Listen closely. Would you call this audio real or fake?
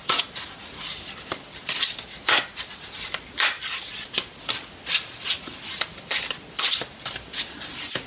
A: real